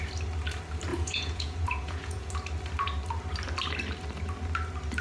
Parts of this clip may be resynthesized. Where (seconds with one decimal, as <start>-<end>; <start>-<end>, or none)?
0.9-2.3